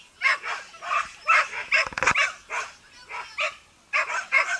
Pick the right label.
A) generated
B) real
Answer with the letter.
B